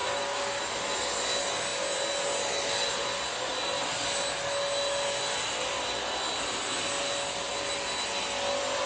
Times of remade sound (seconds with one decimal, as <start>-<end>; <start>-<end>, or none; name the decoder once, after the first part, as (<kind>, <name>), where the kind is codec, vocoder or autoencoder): 0.0-0.6 (codec, DAC)